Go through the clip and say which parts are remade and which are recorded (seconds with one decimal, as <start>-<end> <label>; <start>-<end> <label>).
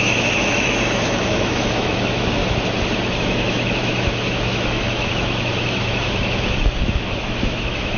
0.0-2.4 remade; 2.4-3.2 recorded; 3.2-8.0 remade